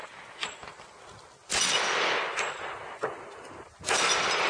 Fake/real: real